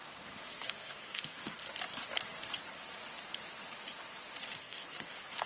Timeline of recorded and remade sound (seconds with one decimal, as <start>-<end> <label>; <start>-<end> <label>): 0.0-0.5 recorded; 0.5-1.6 remade; 1.6-4.6 recorded; 4.6-5.5 remade